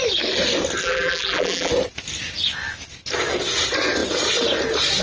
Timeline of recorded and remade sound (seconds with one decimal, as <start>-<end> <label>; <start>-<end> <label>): 0.0-0.8 recorded; 0.8-1.7 remade; 1.7-5.0 recorded